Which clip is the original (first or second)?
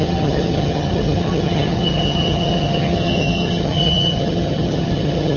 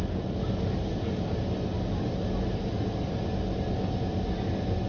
second